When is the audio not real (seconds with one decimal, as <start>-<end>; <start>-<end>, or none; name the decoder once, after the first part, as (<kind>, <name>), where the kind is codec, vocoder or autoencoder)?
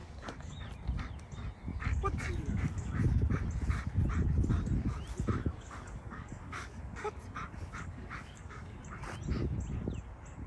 0.0-0.6 (codec, DAC); 1.7-3.0; 5.4-8.8